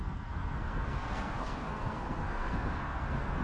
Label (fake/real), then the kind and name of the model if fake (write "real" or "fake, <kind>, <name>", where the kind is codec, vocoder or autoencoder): fake, codec, SNAC